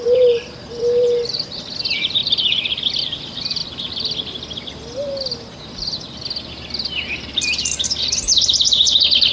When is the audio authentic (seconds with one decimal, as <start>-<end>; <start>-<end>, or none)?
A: 2.2-3.0; 3.6-7.3